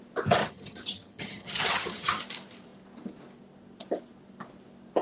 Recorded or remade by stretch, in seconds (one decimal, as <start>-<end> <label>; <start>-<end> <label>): 0.0-0.4 recorded; 0.4-2.2 remade; 2.2-5.0 recorded